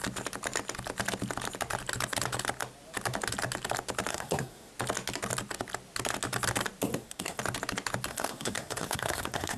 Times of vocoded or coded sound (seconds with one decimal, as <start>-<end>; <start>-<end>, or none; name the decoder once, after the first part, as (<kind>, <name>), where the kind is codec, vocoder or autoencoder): 4.1-4.7 (codec, SNAC); 6.9-7.4; 8.1-9.6

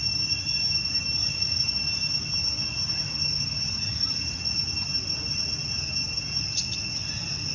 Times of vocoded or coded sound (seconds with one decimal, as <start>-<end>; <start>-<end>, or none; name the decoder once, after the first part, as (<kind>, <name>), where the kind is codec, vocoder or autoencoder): 1.2-1.7 (vocoder, Vocos); 3.9-4.6